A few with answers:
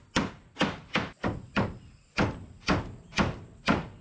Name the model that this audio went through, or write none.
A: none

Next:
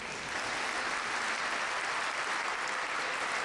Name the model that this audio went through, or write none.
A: none